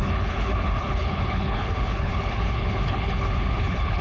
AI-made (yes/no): yes